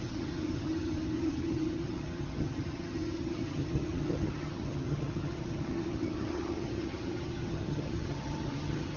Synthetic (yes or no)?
yes